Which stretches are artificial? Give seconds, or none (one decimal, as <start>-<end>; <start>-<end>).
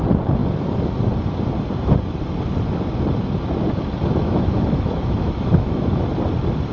4.2-6.1